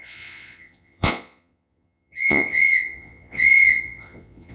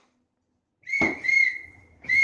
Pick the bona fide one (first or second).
second